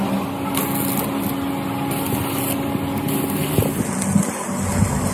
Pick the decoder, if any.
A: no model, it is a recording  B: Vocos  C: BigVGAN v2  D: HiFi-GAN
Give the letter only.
A